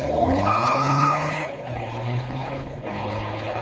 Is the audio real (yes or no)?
no